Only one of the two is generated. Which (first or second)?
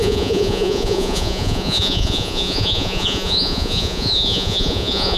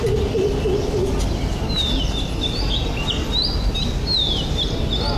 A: first